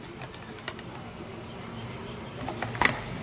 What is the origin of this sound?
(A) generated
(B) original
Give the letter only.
B